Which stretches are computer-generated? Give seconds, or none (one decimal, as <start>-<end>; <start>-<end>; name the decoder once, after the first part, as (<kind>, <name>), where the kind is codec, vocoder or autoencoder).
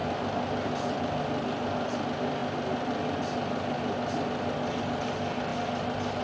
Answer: none